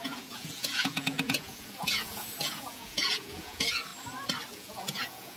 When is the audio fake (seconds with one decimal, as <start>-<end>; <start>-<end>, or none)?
0.0-3.9; 4.5-5.4